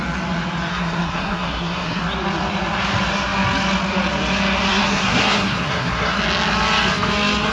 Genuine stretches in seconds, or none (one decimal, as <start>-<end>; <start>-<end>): 0.0-0.7; 2.0-4.7; 6.2-7.5